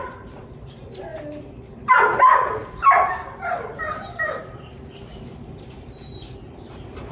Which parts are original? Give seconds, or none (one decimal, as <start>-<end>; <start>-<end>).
1.1-3.5